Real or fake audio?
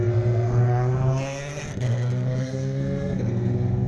fake